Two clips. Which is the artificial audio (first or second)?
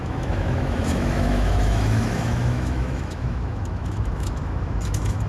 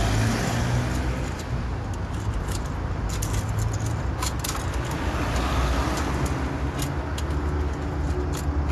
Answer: first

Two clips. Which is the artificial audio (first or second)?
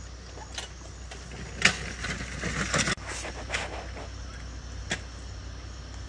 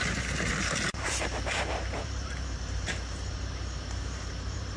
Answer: second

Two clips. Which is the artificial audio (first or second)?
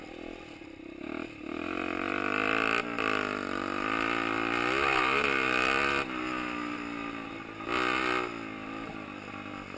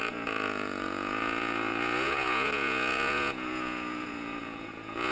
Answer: second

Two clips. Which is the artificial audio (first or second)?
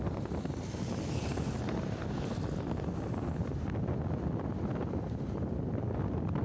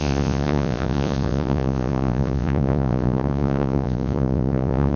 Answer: second